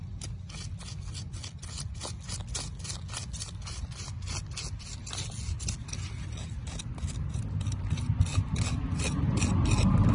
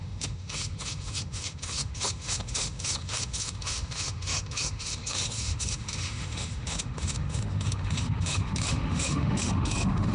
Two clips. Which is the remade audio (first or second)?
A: second